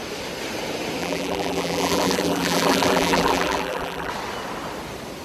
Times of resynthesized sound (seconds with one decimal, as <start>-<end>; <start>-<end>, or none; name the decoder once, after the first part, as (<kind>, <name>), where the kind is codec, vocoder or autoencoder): 1.0-4.1 (vocoder, BigVGAN v2)